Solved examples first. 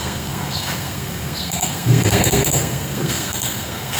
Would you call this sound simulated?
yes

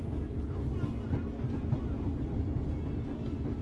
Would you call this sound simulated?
no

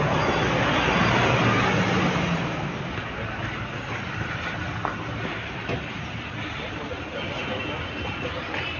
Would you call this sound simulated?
no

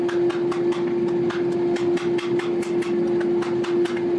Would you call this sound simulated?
no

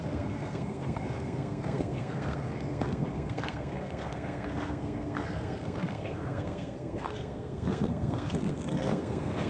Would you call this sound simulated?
yes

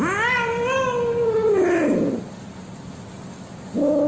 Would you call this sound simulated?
no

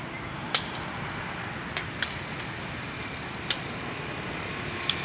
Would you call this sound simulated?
no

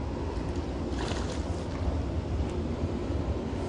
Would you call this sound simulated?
no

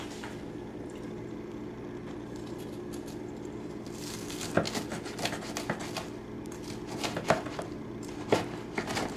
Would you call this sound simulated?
no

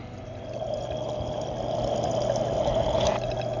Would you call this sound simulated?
no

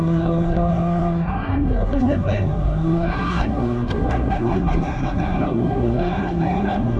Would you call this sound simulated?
yes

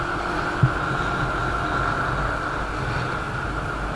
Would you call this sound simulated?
no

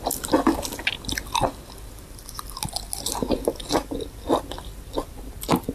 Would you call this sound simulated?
no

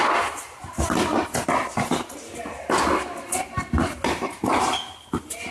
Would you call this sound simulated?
no